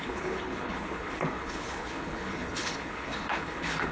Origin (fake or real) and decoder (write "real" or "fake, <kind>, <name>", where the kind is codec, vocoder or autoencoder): fake, codec, HILCodec